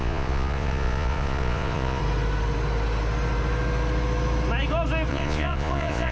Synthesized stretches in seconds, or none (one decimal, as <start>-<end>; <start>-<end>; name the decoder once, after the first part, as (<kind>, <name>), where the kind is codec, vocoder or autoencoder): 0.0-2.0 (vocoder, Vocos); 5.1-6.1